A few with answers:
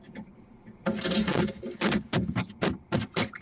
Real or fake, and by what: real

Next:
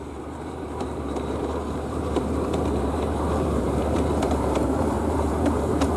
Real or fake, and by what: fake, vocoder, BigVGAN v2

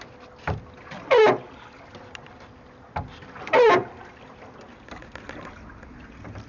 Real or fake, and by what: real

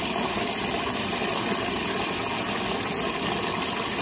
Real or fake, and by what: real